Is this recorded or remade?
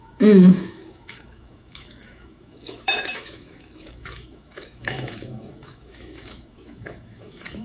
remade